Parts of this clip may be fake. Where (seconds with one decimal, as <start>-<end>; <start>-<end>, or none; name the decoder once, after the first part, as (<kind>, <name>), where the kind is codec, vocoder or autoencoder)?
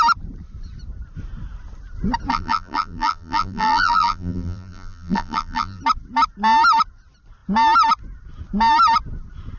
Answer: 2.3-5.8 (vocoder, BigVGAN v2)